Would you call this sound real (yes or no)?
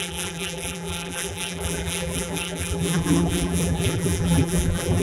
no